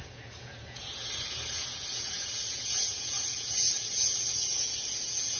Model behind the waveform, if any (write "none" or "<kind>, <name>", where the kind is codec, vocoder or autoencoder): vocoder, Vocos